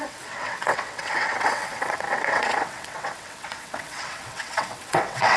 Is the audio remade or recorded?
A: remade